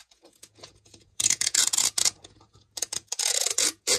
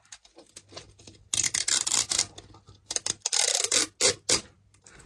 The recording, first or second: second